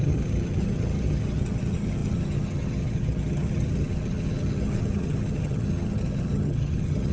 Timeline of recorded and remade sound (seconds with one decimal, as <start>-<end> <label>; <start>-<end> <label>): 0.0-7.1 remade

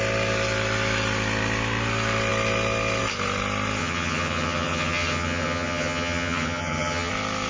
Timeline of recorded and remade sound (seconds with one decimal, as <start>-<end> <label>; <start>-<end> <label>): 0.0-3.8 recorded; 3.8-7.1 remade; 7.1-7.5 recorded